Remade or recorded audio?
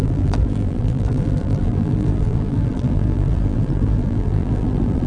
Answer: remade